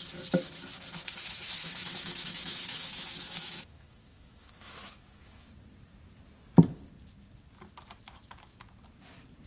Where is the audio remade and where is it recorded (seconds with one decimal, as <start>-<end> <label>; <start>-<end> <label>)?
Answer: 0.0-1.2 recorded; 1.2-5.5 remade; 5.5-9.5 recorded